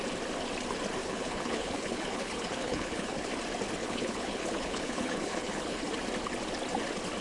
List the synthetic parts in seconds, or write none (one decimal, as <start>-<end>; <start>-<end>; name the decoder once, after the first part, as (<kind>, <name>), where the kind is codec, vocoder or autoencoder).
1.0-3.3 (codec, HILCodec); 3.8-5.8